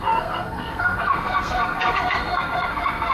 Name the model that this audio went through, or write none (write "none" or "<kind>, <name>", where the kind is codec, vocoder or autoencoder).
codec, SNAC